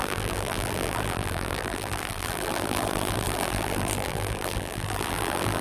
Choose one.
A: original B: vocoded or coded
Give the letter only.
B